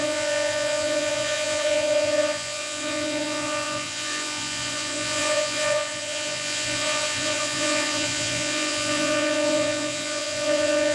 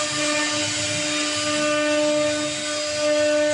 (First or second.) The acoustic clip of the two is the second